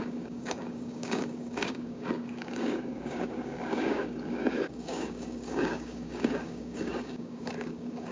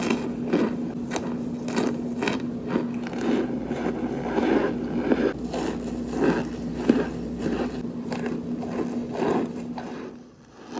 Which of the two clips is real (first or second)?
second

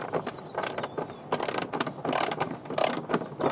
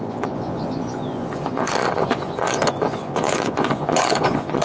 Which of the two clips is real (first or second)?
first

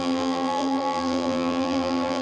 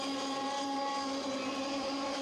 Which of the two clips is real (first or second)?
second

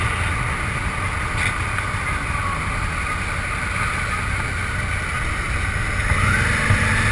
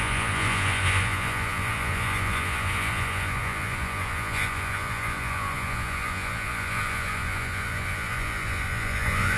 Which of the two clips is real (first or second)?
first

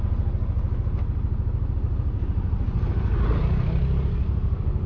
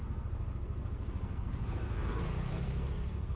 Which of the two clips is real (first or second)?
first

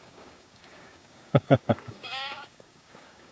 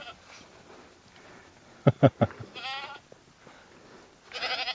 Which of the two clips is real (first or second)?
second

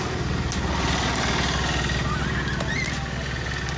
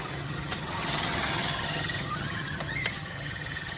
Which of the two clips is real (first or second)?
first